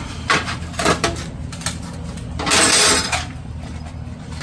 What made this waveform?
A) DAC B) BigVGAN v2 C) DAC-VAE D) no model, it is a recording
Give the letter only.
B